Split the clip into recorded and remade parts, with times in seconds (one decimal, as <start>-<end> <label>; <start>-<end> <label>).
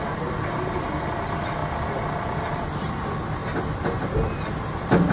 0.0-5.1 recorded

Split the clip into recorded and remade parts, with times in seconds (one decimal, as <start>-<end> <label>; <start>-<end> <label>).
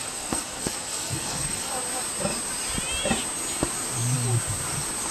0.0-1.7 remade; 1.7-5.1 recorded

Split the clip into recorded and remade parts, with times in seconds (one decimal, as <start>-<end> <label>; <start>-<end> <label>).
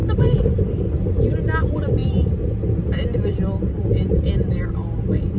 0.0-5.4 recorded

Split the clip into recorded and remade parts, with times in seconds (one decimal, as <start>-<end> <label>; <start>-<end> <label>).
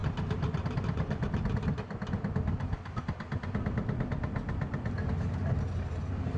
0.0-6.4 recorded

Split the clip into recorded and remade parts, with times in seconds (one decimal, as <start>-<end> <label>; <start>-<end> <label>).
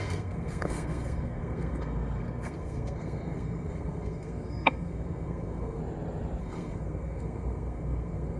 0.0-5.8 remade; 5.8-6.4 recorded; 6.4-8.4 remade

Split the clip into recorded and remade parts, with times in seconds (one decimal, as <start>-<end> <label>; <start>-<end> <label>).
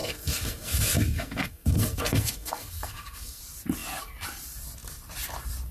0.0-3.4 remade; 3.4-5.7 recorded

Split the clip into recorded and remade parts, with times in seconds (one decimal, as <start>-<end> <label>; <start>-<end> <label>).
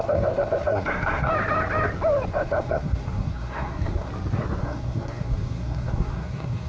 0.0-1.3 remade; 1.3-2.3 recorded; 2.3-4.1 remade; 4.1-4.6 recorded; 4.6-6.7 remade